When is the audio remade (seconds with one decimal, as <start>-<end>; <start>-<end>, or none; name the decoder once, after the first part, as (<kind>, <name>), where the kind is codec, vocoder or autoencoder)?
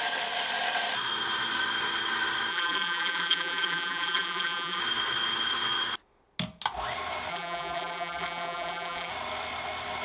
2.5-4.8 (vocoder, BigVGAN v2); 7.3-9.1